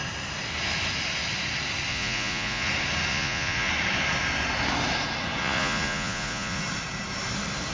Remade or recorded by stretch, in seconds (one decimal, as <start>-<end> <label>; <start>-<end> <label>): 0.0-1.9 recorded; 1.9-2.7 remade; 2.7-3.1 recorded; 3.1-3.7 remade; 3.7-5.4 recorded; 5.4-6.6 remade; 6.6-7.7 recorded